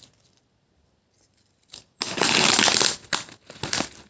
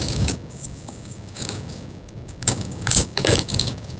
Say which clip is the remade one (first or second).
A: second